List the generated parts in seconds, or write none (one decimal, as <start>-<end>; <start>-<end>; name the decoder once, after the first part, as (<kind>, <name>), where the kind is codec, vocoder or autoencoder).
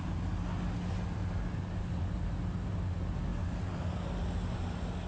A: none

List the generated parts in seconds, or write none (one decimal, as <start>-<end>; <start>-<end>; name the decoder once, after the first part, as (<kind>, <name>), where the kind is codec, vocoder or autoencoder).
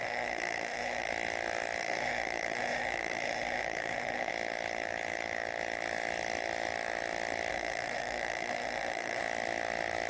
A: 0.0-1.1 (autoencoder, DAC-VAE); 1.8-4.3; 7.5-9.2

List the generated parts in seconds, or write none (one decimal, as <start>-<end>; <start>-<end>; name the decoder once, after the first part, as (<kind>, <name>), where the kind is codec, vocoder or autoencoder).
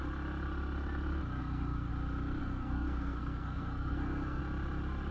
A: 1.4-1.9 (codec, SNAC); 2.4-4.4